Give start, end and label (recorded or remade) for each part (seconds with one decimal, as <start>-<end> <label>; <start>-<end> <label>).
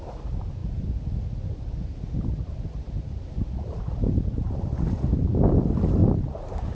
0.0-6.7 recorded